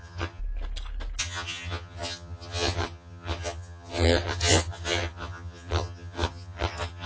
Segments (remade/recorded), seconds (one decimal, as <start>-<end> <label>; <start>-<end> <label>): 0.0-0.4 remade; 0.4-1.2 recorded; 1.2-7.1 remade